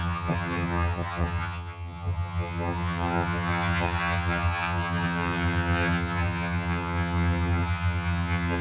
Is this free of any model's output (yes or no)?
no